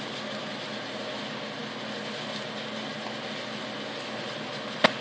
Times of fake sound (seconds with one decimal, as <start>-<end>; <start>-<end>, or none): none